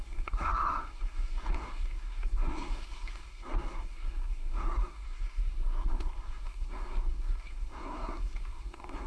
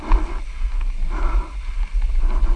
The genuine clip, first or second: second